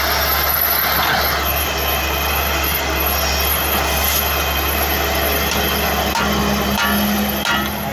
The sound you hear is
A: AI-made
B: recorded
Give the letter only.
B